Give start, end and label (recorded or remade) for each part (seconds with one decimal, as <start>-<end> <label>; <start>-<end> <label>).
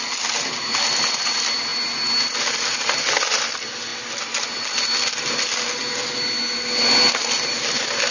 0.0-8.1 recorded